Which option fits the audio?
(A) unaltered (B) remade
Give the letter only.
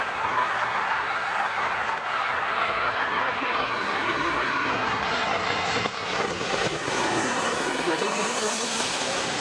B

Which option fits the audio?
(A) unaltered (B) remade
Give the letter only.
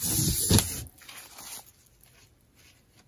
A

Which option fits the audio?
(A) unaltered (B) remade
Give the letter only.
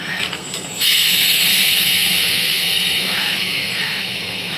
B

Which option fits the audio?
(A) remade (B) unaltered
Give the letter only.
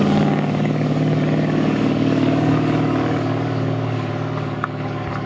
A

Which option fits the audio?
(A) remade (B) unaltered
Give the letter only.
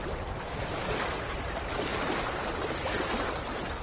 B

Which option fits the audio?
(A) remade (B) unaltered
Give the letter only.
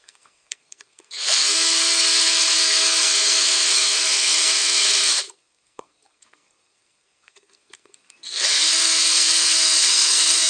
A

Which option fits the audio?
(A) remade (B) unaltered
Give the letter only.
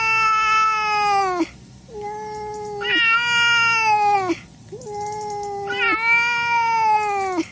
B